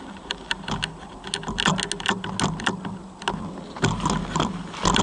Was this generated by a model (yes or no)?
no